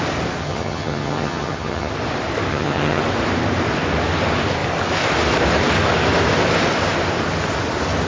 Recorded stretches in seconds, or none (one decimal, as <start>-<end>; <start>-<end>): 0.0-0.4; 1.9-2.5; 3.0-8.1